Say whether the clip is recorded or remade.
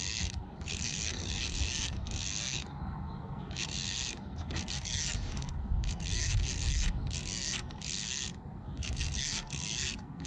remade